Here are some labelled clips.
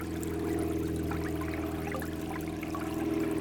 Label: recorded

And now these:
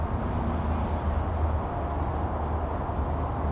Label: recorded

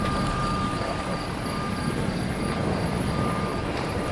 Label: remade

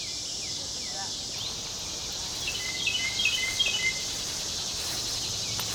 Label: recorded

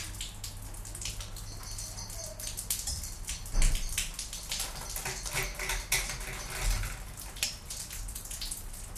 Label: recorded